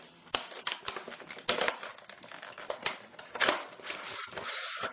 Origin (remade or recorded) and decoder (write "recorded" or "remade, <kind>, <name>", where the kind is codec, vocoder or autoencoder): recorded